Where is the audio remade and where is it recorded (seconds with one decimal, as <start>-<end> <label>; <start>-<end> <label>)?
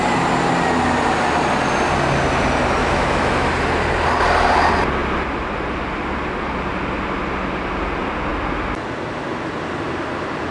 0.0-2.8 recorded; 2.8-3.5 remade; 3.5-10.5 recorded